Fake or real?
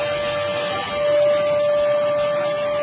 real